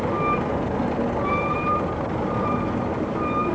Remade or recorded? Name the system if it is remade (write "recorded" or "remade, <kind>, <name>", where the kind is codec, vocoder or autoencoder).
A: recorded